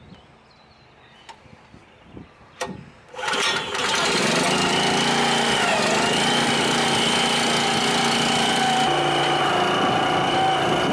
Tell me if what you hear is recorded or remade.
recorded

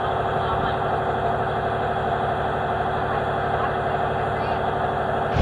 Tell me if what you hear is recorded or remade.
recorded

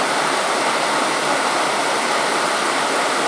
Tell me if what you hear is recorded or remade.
recorded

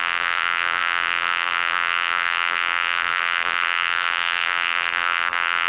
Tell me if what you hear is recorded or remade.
remade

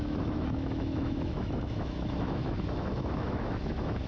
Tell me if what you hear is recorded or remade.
remade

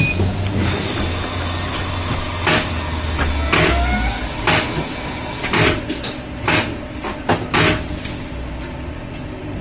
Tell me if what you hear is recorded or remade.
recorded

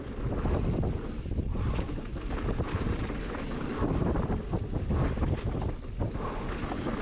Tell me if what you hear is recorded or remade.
recorded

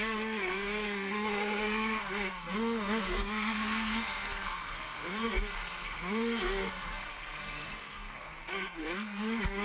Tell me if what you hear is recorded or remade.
remade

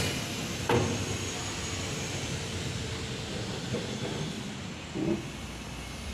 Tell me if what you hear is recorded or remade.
recorded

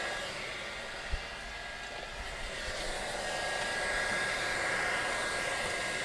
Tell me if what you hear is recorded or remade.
recorded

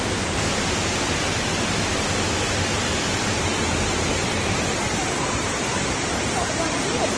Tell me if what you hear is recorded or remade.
recorded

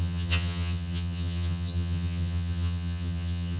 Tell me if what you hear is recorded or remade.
remade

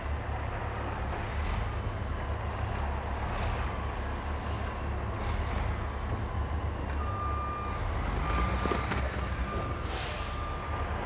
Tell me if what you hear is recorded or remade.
recorded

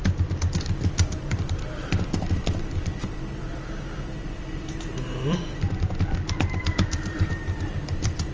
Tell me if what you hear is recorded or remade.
remade